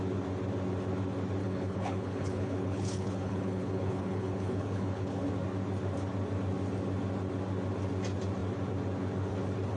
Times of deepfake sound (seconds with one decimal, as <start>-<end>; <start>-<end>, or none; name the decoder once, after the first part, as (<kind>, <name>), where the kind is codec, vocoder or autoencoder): 1.4-5.3 (codec, HILCodec)